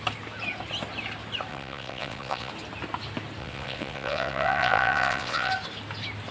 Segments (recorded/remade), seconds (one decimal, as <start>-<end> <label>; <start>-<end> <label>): 0.0-1.5 recorded; 1.5-2.5 remade; 2.5-3.4 recorded; 3.4-5.5 remade; 5.5-6.3 recorded